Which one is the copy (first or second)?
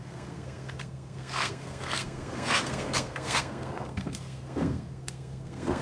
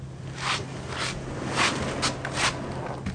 first